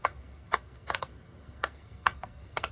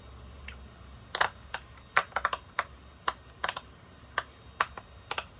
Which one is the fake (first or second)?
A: first